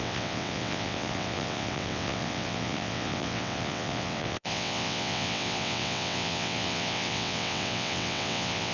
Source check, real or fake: fake